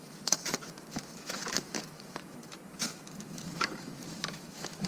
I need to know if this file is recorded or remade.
remade